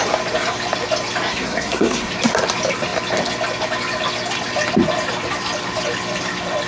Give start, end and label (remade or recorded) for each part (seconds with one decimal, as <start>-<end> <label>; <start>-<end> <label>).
0.0-1.3 recorded; 1.3-2.1 remade; 2.1-6.7 recorded